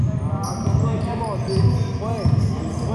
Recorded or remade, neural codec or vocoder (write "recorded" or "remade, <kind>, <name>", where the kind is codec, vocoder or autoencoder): recorded